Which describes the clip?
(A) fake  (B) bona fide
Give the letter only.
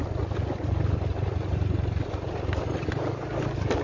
B